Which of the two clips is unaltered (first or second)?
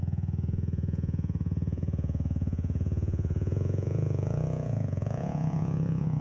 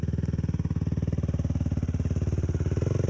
second